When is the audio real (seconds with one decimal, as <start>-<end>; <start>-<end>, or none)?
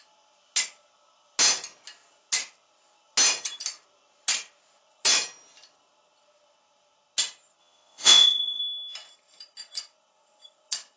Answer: 0.0-7.6; 8.6-11.0